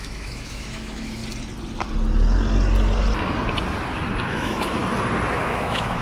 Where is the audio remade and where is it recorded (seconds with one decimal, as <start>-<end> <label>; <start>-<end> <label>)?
0.0-1.2 remade; 1.2-4.3 recorded; 4.3-4.8 remade; 4.8-5.4 recorded; 5.4-6.0 remade